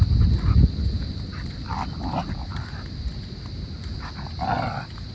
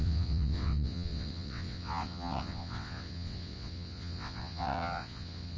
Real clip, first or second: first